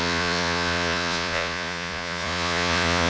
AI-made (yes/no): yes